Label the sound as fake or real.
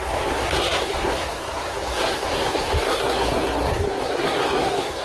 fake